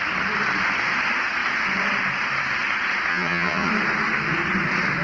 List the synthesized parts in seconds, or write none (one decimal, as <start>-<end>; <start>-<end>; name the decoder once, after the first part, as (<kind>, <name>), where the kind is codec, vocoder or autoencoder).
3.1-3.7 (vocoder, HiFi-GAN)